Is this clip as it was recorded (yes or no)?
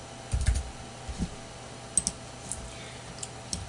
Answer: yes